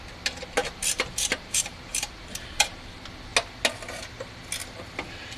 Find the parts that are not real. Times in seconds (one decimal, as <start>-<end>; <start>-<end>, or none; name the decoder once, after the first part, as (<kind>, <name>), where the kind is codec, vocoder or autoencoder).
0.6-2.8 (vocoder, BigVGAN v2)